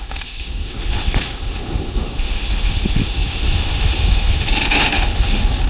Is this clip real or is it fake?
fake